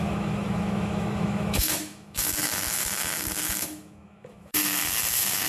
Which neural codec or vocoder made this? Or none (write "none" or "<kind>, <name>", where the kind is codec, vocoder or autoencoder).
autoencoder, DAC-VAE